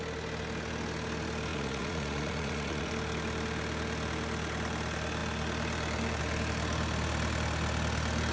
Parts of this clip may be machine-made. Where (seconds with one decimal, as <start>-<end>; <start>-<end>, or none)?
1.5-2.9